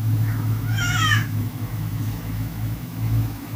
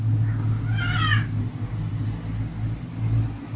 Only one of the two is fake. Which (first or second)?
first